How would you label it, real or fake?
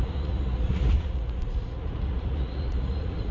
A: fake